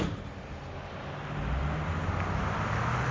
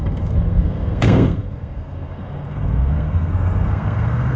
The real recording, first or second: first